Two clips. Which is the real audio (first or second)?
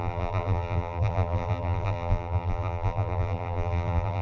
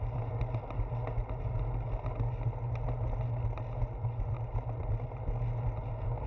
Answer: second